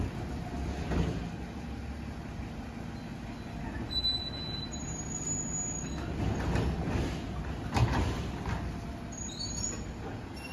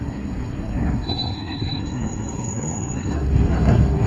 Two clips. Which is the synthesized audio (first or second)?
second